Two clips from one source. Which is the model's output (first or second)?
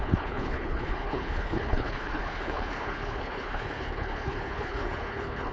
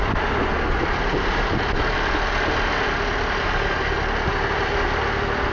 first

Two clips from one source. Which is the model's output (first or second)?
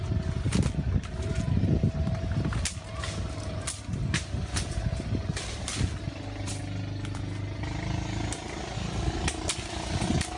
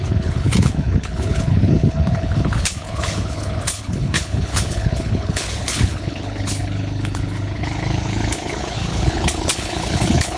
second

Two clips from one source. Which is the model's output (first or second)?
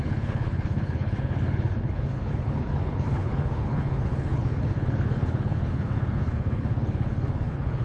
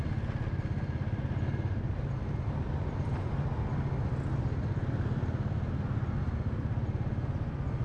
first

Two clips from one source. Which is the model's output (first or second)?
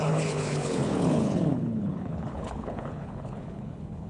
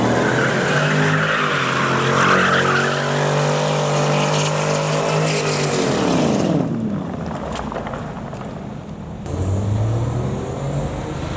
first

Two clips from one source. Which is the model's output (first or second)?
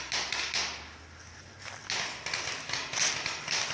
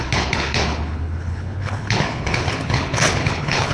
second